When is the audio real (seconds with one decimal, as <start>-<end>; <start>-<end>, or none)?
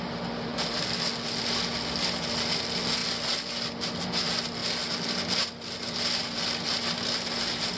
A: 0.0-7.8